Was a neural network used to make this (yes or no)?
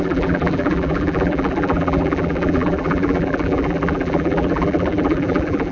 yes